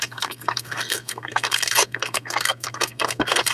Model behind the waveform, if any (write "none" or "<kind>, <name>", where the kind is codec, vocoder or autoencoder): codec, SNAC